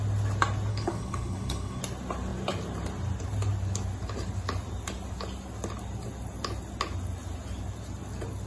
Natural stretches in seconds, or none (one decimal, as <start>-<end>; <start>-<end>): 0.0-0.7; 1.8-8.5